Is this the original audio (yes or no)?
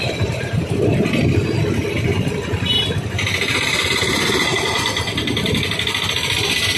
no